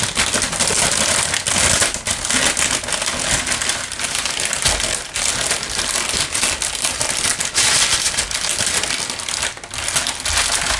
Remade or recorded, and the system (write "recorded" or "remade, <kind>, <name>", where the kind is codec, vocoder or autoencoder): recorded